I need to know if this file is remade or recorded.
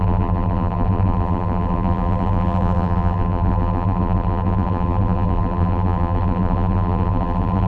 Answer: remade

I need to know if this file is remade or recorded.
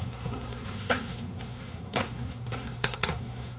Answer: remade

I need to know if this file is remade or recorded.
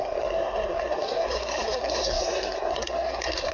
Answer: remade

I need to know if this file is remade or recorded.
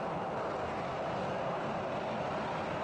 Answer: recorded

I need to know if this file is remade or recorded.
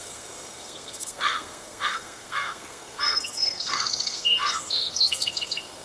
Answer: remade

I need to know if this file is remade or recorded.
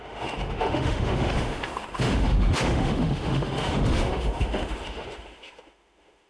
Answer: remade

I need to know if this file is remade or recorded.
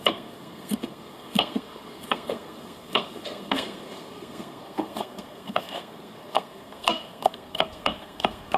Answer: remade